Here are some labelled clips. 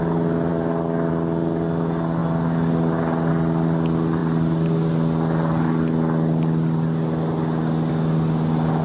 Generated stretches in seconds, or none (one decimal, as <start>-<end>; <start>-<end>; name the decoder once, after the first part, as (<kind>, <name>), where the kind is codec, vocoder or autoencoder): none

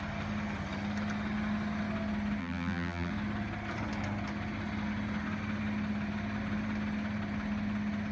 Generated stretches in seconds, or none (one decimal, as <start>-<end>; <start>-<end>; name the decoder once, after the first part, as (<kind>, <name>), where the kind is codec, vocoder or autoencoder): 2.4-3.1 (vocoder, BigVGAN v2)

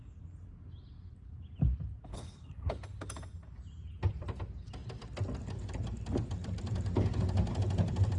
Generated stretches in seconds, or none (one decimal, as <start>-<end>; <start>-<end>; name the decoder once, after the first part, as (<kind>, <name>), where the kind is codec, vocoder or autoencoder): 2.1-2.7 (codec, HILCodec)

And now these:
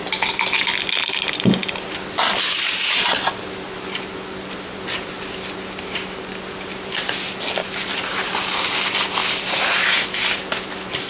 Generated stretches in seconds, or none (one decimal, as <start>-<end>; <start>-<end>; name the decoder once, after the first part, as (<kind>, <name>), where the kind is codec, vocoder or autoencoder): 7.6-8.6 (vocoder, BigVGAN v2); 9.2-10.4

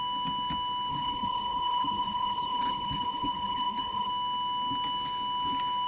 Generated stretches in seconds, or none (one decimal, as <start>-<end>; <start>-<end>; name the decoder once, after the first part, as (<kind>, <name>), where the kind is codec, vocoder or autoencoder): 0.9-4.1 (codec, HILCodec)